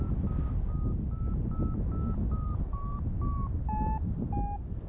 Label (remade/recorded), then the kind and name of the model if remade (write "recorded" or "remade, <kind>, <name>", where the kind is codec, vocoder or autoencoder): recorded